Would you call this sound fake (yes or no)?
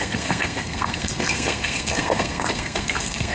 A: yes